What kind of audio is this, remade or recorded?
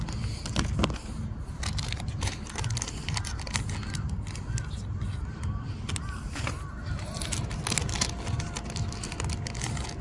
recorded